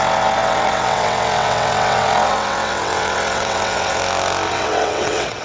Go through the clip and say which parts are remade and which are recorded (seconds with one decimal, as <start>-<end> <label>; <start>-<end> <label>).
0.0-4.0 remade; 4.0-4.5 recorded; 4.5-5.4 remade